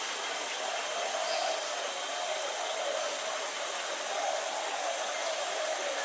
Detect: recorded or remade recorded